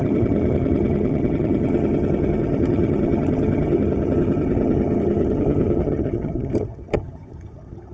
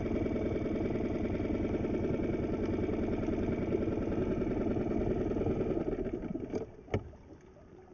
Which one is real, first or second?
second